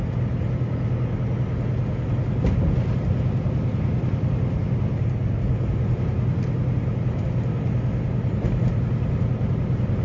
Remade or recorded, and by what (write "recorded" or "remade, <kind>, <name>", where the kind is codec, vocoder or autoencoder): recorded